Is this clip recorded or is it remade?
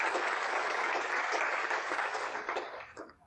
remade